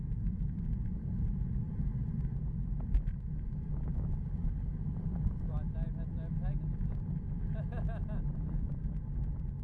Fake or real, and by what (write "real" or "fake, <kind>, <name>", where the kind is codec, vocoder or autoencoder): real